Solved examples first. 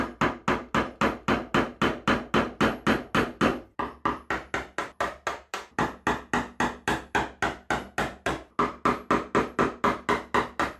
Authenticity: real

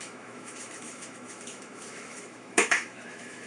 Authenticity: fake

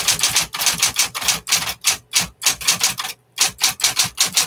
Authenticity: real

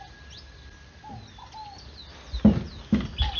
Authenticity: real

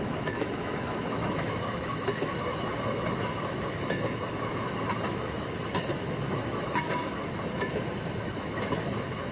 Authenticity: fake